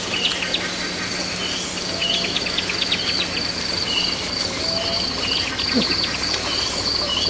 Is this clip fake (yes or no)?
no